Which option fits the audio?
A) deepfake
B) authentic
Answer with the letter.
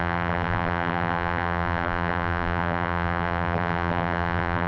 A